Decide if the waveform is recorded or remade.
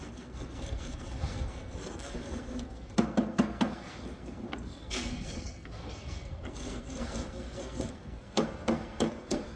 remade